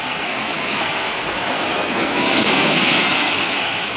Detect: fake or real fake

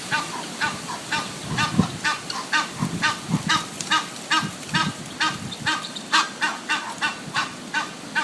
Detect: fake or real fake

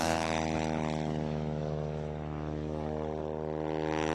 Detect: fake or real fake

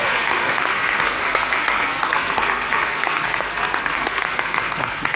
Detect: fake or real fake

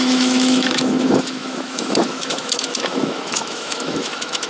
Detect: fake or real fake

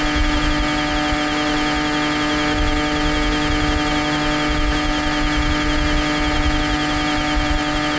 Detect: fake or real real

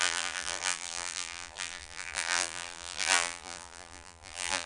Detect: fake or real fake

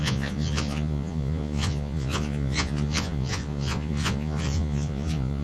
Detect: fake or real fake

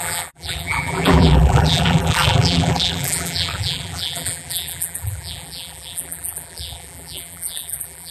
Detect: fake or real fake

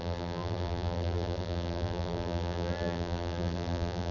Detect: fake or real fake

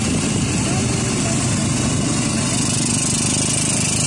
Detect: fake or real real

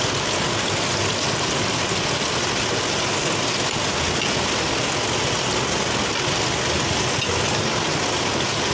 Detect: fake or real real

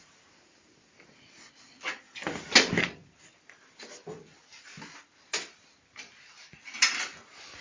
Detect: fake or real real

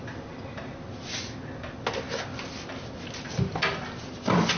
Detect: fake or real real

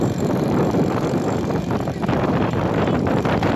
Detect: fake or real fake